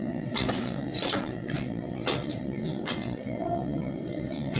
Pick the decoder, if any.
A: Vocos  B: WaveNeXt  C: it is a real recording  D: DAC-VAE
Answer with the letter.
B